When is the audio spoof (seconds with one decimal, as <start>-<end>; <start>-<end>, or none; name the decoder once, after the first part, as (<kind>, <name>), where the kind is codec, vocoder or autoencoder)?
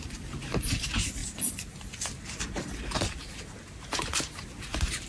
0.0-1.2 (vocoder, BigVGAN v2); 3.1-5.1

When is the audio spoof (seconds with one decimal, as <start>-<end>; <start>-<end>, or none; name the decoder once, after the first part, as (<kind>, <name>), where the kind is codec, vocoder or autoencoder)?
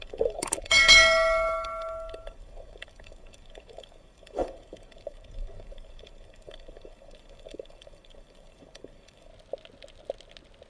0.0-9.3 (codec, DAC)